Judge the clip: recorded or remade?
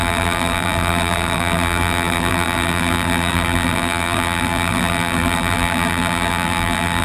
remade